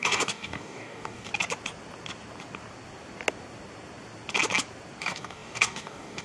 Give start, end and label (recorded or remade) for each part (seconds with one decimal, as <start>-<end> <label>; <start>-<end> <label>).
0.0-1.3 remade; 1.3-5.0 recorded; 5.0-6.2 remade